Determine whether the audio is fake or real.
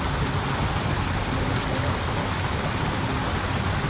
real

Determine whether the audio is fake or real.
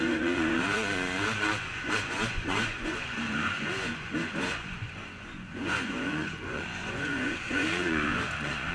fake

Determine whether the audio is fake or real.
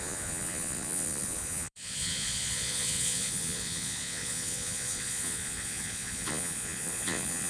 fake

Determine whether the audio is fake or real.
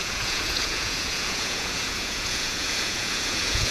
fake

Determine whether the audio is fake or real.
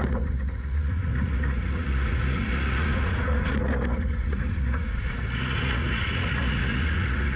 fake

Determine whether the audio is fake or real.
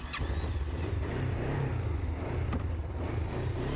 real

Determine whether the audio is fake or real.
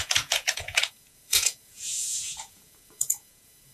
fake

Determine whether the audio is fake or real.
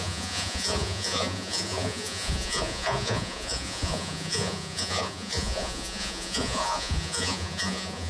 fake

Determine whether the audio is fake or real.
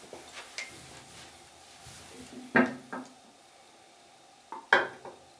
real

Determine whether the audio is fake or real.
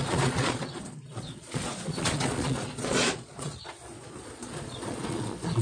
fake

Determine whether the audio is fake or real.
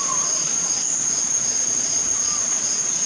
fake